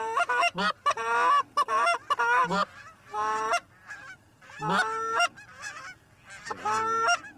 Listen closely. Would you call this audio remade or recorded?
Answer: recorded